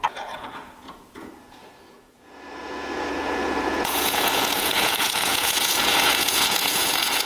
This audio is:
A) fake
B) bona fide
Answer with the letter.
A